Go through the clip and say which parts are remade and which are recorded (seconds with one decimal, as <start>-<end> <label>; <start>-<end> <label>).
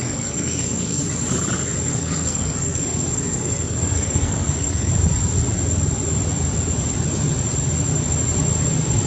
0.0-1.0 remade; 1.0-1.9 recorded; 1.9-4.9 remade; 4.9-9.1 recorded